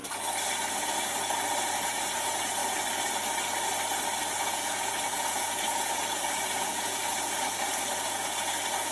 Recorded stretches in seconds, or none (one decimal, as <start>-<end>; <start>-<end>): 0.0-0.7; 2.6-4.4